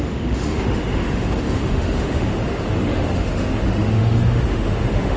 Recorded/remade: remade